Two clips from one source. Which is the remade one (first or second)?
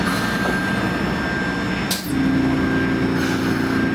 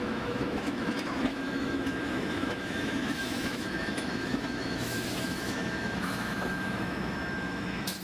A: second